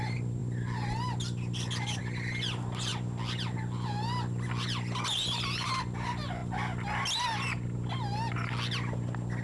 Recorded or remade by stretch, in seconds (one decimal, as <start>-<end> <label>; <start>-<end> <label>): 0.0-9.4 recorded